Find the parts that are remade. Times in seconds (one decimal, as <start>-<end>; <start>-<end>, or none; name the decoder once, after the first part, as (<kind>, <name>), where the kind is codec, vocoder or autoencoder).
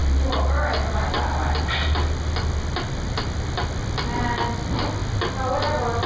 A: none